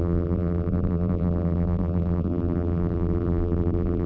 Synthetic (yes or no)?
yes